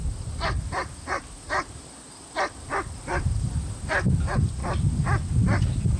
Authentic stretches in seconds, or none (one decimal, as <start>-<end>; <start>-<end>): 3.4-4.6